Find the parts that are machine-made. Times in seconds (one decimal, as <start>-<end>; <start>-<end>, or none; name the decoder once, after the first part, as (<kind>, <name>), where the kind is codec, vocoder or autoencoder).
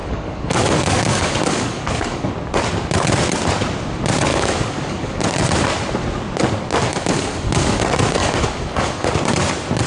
0.0-2.3 (codec, DAC); 4.3-5.2; 6.9-7.8; 8.2-9.1